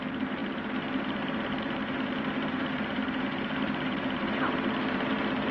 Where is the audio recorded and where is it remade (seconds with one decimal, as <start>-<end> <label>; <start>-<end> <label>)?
0.0-5.5 recorded